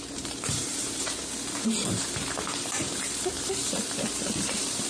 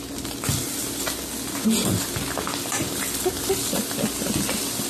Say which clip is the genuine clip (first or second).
second